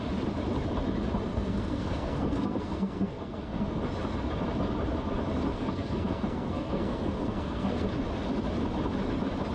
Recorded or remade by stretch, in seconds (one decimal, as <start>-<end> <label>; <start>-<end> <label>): 0.0-1.3 recorded; 1.3-3.7 remade; 3.7-5.5 recorded; 5.5-7.9 remade; 7.9-9.5 recorded